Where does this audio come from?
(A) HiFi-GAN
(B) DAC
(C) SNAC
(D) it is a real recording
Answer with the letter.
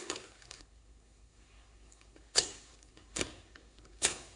C